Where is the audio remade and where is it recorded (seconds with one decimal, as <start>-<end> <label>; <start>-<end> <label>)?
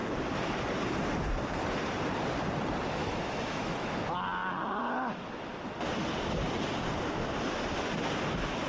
0.0-3.0 recorded; 3.0-4.0 remade; 4.0-8.7 recorded